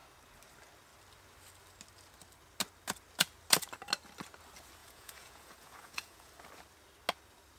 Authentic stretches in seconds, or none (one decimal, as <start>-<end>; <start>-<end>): 0.0-4.8; 6.3-7.6